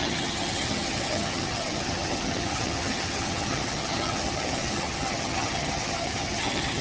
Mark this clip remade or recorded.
remade